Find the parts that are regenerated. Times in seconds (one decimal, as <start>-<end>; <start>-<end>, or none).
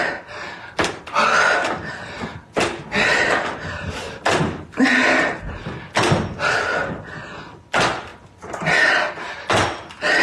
none